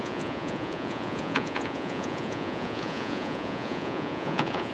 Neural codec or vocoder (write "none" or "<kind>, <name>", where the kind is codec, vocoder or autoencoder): vocoder, Vocos